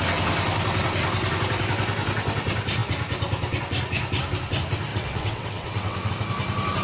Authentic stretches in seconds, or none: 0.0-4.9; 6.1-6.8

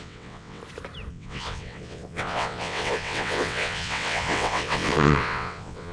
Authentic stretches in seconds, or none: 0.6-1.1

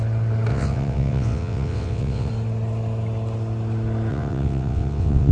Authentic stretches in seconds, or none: 0.0-0.5; 2.3-4.1

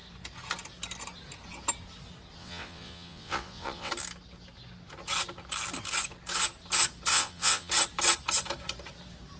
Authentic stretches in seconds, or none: 0.0-2.4; 3.9-7.1; 7.7-9.4

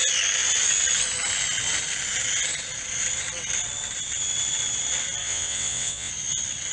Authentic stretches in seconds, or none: 0.0-5.2; 6.1-6.7